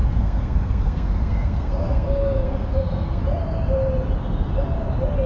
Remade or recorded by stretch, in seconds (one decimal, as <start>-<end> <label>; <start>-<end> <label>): 0.0-3.2 remade; 3.2-5.3 recorded